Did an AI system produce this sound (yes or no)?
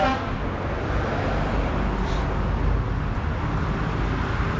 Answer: no